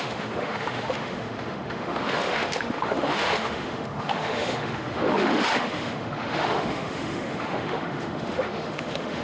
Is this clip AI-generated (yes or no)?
yes